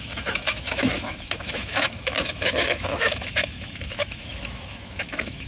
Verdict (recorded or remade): remade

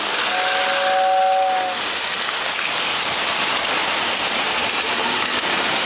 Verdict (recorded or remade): recorded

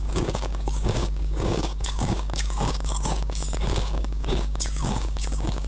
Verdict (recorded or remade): remade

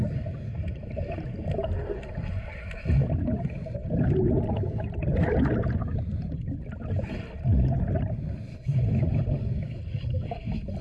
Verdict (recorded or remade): recorded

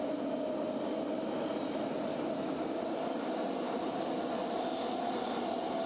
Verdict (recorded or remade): recorded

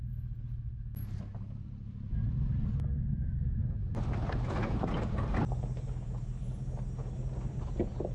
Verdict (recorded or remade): recorded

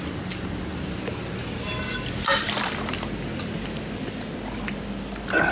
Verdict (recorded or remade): recorded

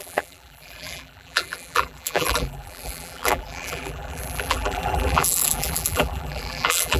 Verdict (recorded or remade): remade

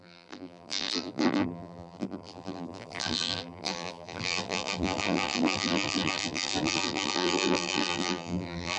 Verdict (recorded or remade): remade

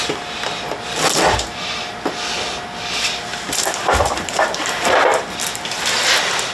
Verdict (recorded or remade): recorded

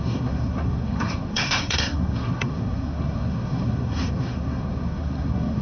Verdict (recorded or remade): remade